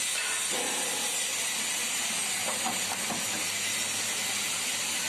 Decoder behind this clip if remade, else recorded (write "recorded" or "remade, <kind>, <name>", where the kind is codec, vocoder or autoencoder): recorded